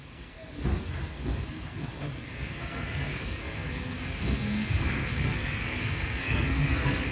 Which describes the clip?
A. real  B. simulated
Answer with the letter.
B